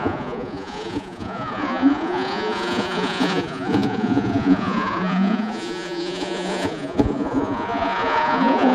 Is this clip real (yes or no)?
no